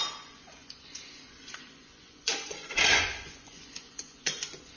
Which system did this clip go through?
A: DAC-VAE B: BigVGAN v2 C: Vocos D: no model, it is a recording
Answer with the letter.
C